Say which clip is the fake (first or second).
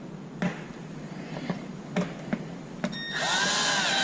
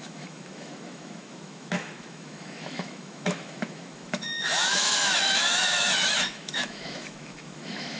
second